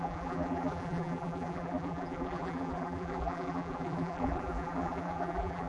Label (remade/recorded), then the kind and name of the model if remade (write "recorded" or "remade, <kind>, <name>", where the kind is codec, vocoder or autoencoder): remade, vocoder, BigVGAN v2